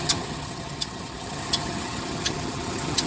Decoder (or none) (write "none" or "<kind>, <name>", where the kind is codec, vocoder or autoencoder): vocoder, HiFi-GAN